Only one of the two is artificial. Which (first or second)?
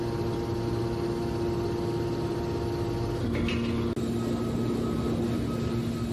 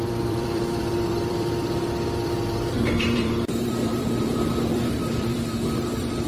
second